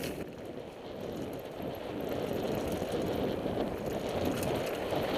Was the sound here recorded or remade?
recorded